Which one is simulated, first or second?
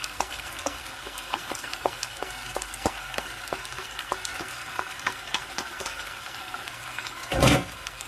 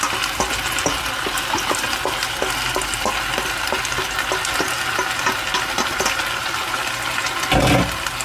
first